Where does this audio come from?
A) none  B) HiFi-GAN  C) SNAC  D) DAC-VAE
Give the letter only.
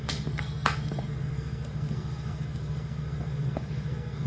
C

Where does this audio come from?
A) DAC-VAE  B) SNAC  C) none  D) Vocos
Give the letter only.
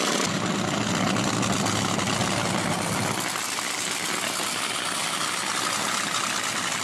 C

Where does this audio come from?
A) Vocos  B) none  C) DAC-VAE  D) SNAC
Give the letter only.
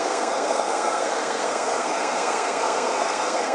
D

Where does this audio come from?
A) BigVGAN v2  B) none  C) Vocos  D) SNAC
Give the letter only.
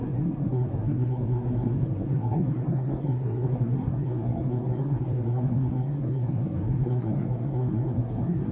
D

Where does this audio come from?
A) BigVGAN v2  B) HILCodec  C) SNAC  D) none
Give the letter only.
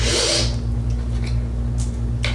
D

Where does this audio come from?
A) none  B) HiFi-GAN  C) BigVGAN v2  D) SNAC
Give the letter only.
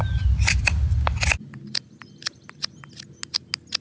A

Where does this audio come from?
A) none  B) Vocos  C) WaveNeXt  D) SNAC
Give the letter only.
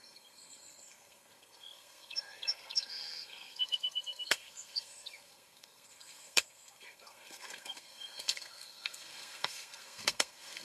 D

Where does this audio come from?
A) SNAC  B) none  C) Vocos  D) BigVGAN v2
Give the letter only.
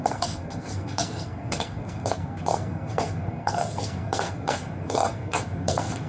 A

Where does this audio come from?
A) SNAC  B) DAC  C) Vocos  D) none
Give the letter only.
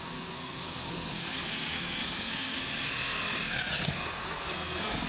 A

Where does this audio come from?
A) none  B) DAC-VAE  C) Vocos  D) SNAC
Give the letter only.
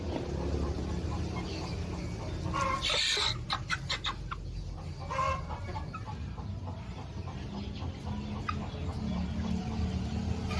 A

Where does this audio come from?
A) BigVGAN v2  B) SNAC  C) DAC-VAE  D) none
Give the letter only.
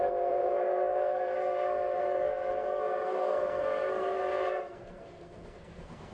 B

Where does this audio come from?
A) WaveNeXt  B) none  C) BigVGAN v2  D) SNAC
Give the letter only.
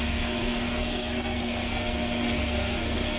D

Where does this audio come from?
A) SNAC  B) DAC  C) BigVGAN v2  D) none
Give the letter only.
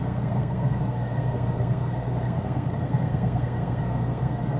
A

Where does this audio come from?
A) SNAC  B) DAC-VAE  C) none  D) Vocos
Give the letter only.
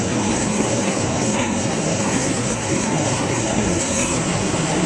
A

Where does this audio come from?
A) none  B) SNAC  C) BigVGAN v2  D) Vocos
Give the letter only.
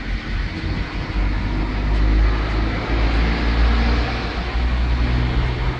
A